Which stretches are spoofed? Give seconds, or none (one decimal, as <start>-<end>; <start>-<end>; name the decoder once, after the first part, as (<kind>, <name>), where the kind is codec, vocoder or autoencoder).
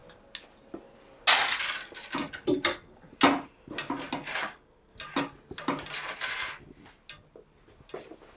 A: none